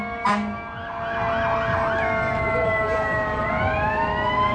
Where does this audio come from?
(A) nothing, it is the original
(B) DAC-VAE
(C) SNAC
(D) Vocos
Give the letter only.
A